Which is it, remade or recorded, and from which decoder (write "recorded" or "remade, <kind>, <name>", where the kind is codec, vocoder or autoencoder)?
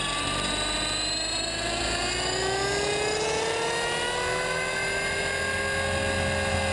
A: recorded